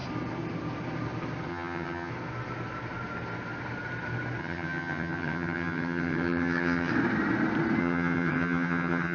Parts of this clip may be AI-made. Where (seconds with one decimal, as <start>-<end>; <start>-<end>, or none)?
1.5-2.1; 4.4-6.9; 7.8-9.1